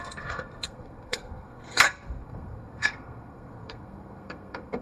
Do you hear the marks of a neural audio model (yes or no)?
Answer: yes